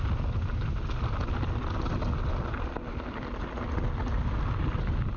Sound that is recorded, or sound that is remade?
recorded